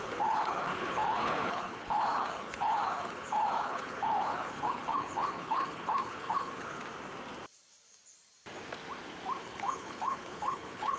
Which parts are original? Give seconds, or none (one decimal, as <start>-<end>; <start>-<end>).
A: 6.8-9.4